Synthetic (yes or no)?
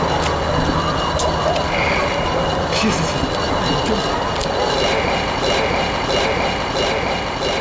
no